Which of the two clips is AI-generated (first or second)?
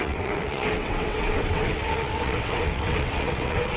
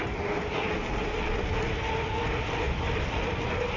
first